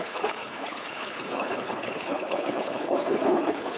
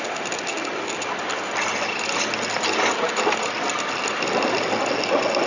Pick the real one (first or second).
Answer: second